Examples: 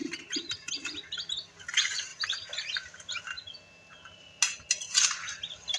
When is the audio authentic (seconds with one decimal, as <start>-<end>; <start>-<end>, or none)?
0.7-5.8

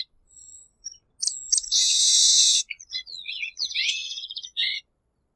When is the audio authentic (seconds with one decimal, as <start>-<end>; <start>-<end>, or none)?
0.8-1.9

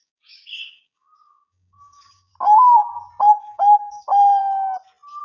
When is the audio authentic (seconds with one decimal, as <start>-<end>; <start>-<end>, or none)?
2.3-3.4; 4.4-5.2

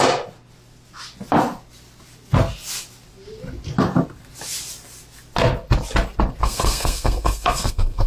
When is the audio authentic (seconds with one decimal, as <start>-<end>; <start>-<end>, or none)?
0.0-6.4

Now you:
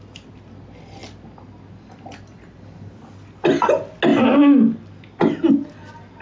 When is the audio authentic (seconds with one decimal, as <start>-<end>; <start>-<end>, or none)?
0.0-6.2

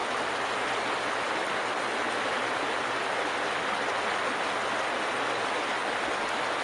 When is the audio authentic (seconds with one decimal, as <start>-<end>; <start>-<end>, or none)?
0.0-6.6

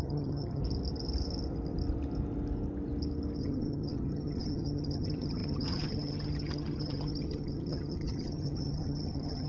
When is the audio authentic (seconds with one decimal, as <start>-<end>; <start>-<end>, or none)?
0.6-3.4

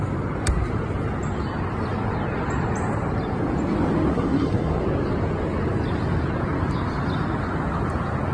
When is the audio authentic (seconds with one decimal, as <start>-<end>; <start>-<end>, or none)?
0.0-4.1; 4.8-8.3